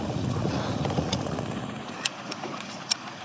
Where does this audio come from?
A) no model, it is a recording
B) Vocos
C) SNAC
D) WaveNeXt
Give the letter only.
B